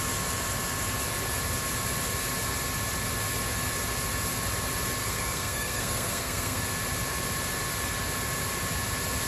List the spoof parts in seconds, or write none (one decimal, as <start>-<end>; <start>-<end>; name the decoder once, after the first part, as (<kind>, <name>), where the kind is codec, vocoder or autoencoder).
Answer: 5.0-6.6 (codec, SNAC)